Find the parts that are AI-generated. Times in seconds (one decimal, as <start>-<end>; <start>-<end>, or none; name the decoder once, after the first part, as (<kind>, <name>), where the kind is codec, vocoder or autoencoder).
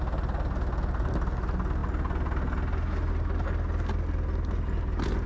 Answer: none